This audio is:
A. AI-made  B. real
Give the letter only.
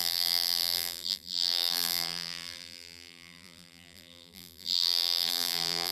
A